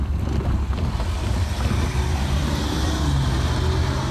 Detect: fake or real real